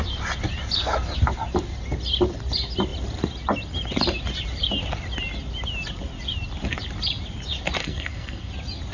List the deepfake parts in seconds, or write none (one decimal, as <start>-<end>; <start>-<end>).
7.8-8.5